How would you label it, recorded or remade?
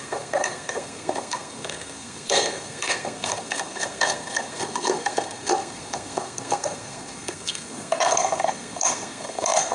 remade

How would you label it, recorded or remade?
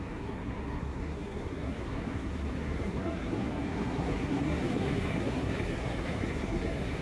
remade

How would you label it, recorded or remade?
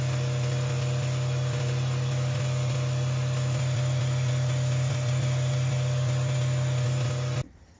recorded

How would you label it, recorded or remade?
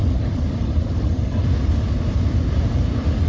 recorded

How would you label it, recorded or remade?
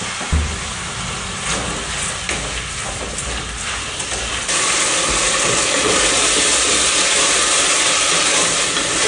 recorded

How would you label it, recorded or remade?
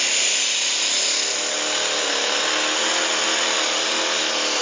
recorded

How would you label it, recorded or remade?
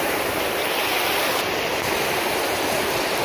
recorded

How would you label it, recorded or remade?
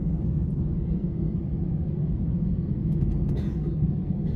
remade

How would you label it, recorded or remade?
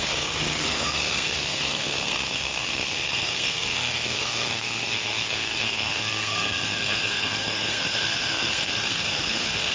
remade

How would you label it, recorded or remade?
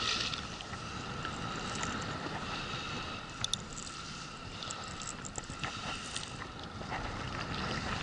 recorded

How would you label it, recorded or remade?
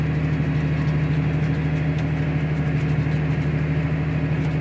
recorded